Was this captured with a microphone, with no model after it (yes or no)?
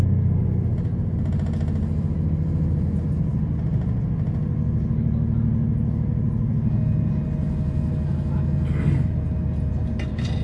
yes